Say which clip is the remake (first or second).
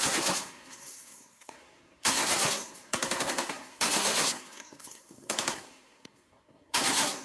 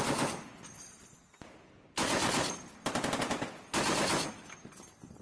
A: first